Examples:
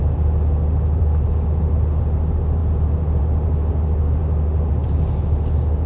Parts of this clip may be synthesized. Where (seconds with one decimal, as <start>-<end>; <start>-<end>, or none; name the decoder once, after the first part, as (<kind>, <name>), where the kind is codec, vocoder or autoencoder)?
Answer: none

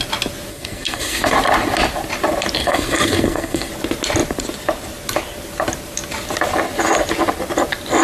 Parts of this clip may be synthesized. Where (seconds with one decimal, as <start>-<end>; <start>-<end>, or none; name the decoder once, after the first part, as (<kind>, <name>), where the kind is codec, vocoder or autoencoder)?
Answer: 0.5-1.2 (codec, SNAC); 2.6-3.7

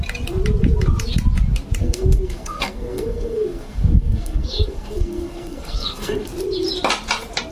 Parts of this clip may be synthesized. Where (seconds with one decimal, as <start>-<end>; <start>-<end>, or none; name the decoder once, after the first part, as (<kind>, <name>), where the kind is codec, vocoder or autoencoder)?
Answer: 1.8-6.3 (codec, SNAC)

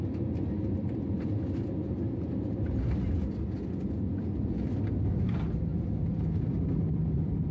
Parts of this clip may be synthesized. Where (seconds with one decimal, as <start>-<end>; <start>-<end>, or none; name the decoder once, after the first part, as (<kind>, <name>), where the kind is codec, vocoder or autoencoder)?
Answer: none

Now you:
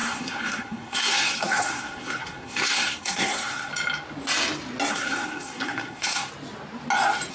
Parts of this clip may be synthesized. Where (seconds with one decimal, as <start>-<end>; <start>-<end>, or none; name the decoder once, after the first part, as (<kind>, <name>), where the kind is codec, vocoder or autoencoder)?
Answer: 0.0-3.7 (codec, SNAC); 4.9-6.3